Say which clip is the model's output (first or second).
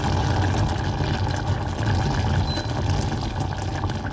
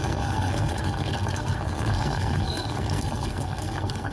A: second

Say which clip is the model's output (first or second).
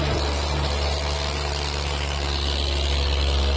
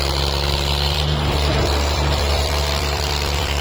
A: second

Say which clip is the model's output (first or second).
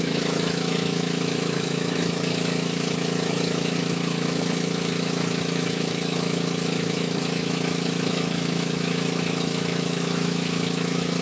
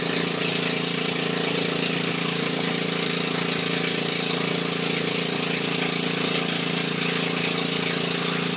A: first